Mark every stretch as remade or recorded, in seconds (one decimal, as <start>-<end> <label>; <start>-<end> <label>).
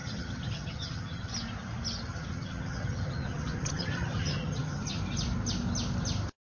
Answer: 0.0-1.3 remade; 1.3-2.1 recorded; 2.1-5.0 remade; 5.0-6.5 recorded